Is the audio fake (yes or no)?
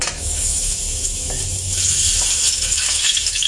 yes